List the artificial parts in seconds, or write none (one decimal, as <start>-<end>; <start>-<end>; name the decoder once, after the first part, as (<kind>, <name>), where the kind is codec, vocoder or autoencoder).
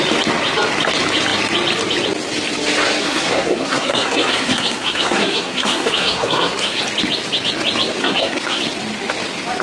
3.0-6.8 (codec, SNAC); 8.0-8.6